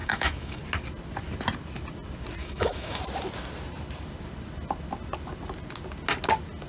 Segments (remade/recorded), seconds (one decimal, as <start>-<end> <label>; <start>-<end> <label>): 0.0-0.6 remade; 0.6-2.4 recorded; 2.4-3.0 remade; 3.0-6.7 recorded